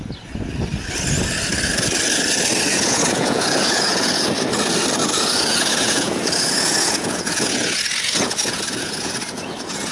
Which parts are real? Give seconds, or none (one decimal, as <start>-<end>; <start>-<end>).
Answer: 0.0-2.7; 4.3-5.0

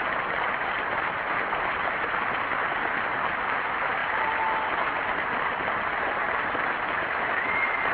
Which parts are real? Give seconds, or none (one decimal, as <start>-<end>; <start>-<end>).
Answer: 0.0-7.9

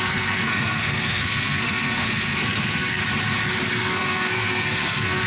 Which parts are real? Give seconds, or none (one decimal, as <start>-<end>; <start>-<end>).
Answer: 3.0-3.7